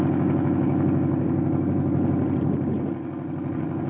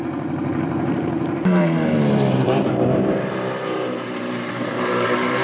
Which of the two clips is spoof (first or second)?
second